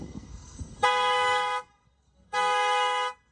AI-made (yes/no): yes